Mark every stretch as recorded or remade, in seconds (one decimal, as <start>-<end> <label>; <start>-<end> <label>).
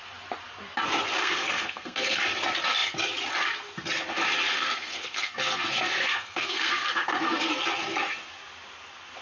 0.0-1.2 recorded; 1.2-2.2 remade; 2.2-4.5 recorded; 4.5-7.5 remade; 7.5-9.2 recorded